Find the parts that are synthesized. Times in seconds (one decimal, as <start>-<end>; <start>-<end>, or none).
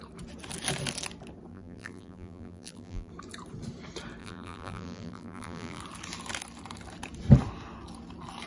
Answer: 1.5-3.1; 4.2-5.8